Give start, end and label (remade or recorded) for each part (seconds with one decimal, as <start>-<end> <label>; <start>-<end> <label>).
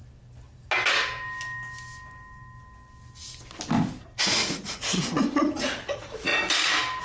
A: 0.0-4.2 recorded; 4.2-6.3 remade; 6.3-7.0 recorded